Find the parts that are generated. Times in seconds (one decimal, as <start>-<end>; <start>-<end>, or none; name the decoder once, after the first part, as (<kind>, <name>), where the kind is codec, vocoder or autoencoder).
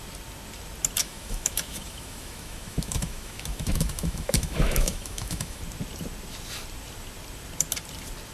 1.0-5.6 (autoencoder, DAC-VAE)